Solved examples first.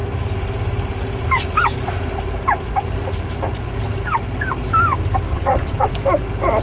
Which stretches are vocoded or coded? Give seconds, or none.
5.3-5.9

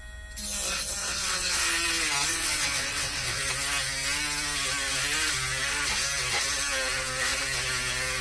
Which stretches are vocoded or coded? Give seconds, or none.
1.0-1.6; 2.3-3.4

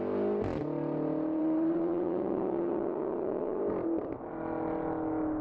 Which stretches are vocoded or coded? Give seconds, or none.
1.4-3.6

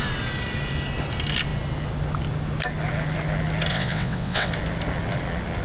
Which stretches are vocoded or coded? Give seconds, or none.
3.7-4.5

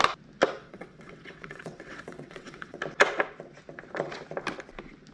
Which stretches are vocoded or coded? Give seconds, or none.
0.6-2.8